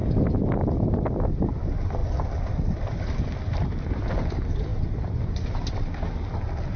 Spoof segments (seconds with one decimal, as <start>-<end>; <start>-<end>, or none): none